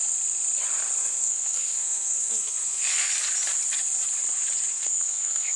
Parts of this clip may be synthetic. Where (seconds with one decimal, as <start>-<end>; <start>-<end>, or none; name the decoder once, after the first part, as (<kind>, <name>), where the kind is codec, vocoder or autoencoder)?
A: 1.0-3.1 (codec, SNAC); 4.7-5.6